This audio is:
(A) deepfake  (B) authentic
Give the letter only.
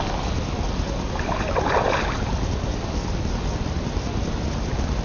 B